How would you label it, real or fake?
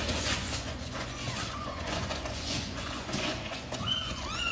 fake